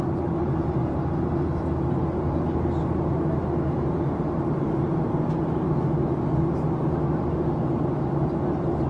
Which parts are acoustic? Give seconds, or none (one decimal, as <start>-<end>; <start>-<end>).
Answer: 0.0-8.9